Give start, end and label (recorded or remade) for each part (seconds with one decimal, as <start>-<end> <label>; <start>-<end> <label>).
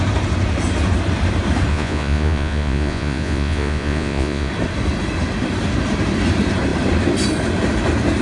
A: 0.0-1.7 recorded; 1.7-4.5 remade; 4.5-8.2 recorded